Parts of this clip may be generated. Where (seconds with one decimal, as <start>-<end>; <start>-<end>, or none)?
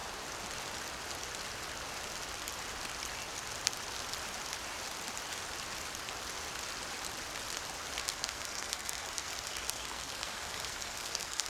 8.0-11.5